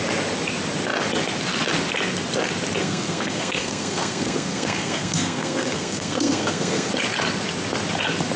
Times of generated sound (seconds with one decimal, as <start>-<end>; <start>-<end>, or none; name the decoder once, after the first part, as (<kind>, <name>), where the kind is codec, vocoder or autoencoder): 2.8-6.9 (codec, SNAC)